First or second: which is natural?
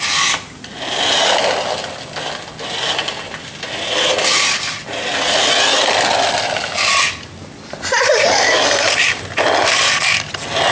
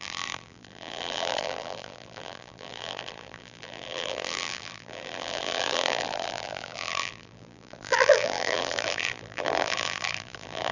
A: first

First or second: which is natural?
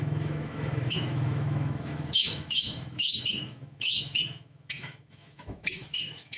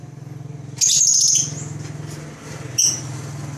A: second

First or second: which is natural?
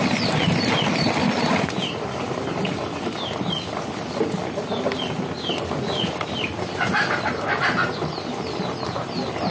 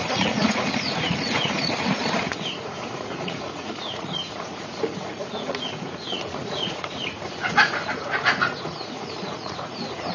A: first